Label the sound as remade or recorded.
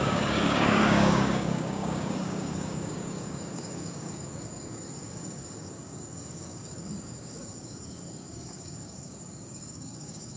remade